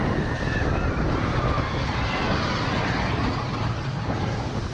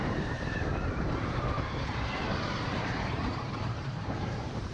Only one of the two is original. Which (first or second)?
first